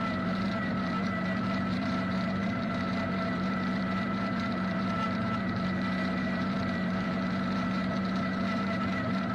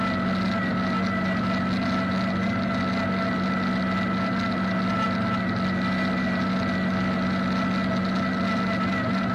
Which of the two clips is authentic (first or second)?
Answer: second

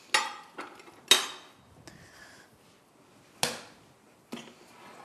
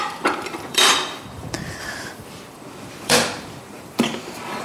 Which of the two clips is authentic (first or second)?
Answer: first